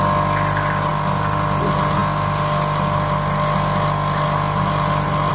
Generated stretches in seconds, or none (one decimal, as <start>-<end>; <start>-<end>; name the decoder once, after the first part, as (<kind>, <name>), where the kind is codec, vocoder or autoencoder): none